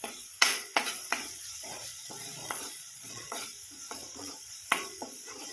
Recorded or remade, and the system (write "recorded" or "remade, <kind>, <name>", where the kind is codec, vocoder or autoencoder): remade, vocoder, Vocos